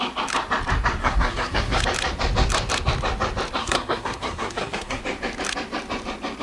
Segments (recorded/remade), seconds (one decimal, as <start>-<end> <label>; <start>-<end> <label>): 0.0-1.0 recorded; 1.0-1.8 remade; 1.8-3.6 recorded; 3.6-5.0 remade; 5.0-6.4 recorded